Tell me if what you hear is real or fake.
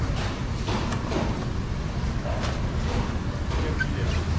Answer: real